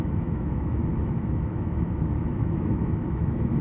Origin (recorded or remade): remade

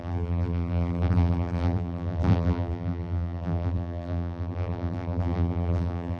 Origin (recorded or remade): remade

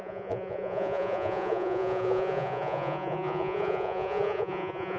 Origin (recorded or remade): remade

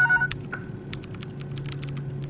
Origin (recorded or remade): recorded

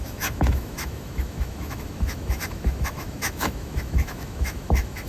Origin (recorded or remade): remade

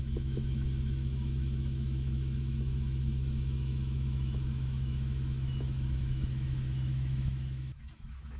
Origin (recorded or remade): remade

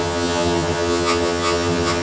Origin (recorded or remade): remade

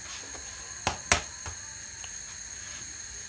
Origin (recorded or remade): recorded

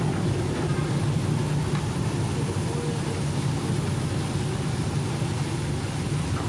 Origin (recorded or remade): recorded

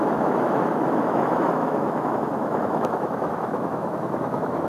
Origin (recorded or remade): remade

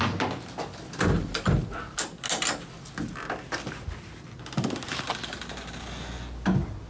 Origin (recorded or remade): recorded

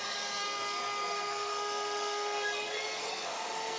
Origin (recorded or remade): remade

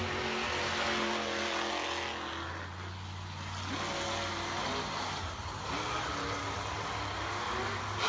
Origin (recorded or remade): recorded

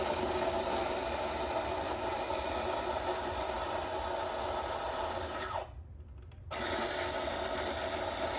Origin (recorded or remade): recorded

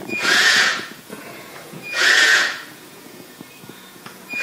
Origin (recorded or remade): remade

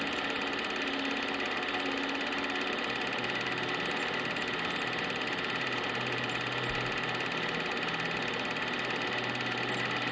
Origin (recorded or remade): recorded